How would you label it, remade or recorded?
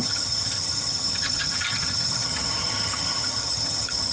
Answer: remade